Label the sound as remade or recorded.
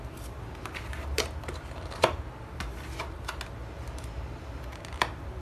recorded